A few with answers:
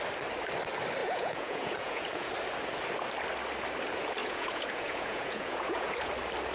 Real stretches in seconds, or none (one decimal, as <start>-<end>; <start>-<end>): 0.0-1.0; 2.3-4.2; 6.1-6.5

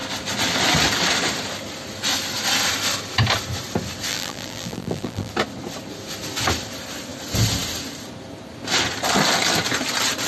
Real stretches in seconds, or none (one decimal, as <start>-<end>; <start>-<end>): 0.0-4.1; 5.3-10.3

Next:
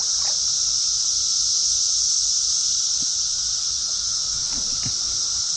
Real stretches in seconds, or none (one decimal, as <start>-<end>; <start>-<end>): 0.0-3.6; 4.5-5.6

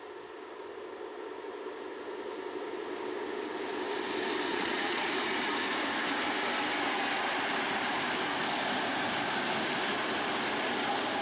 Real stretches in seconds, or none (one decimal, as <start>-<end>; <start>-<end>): 0.0-4.5; 5.1-11.2